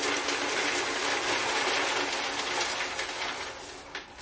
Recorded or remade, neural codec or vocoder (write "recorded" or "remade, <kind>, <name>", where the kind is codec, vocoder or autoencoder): recorded